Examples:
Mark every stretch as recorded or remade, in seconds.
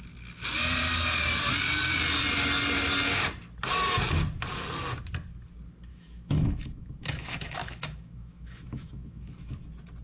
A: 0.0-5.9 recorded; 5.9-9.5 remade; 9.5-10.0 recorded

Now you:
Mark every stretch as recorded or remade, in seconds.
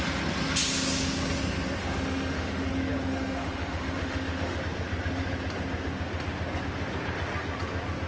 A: 0.0-1.8 recorded; 1.8-2.7 remade; 2.7-3.1 recorded; 3.1-4.6 remade; 4.6-8.1 recorded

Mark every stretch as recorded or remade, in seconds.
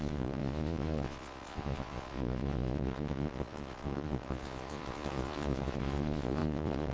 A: 0.0-6.9 remade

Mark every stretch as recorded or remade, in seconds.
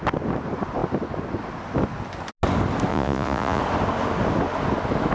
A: 0.0-2.9 recorded; 2.9-3.6 remade; 3.6-5.1 recorded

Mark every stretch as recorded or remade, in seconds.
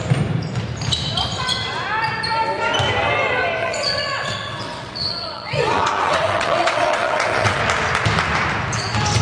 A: 0.0-3.6 recorded; 3.6-7.6 remade; 7.6-9.2 recorded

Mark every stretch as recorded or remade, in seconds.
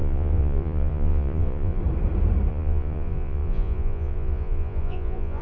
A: 0.0-1.8 remade; 1.8-2.5 recorded; 2.5-5.4 remade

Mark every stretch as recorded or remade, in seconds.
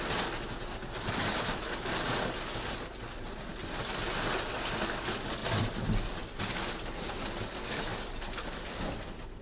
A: 0.0-0.8 recorded; 0.8-1.6 remade; 1.6-5.4 recorded; 5.4-6.4 remade; 6.4-7.9 recorded; 7.9-9.4 remade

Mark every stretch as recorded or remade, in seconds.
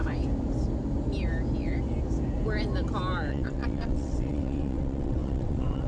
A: 0.0-3.3 recorded; 3.3-5.9 remade